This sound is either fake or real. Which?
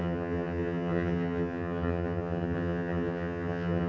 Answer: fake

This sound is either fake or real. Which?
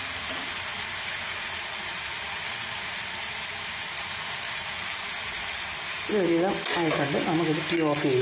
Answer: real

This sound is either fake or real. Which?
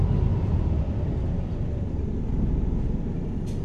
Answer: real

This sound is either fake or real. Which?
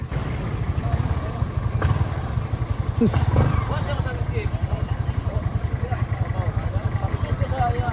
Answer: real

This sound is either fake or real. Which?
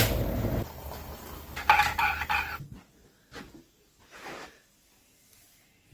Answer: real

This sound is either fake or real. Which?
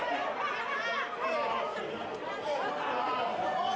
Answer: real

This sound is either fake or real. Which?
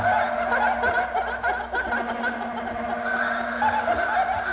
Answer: real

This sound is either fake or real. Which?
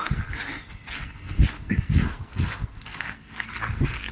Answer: fake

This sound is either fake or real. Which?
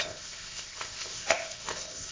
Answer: fake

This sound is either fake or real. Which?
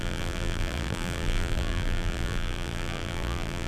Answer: fake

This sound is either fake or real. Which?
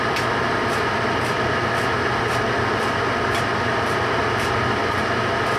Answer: real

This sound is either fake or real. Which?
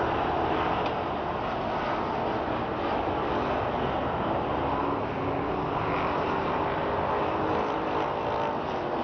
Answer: real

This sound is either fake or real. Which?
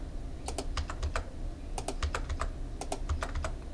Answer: real